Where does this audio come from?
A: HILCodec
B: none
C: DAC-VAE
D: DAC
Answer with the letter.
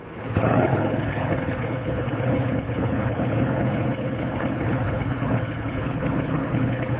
A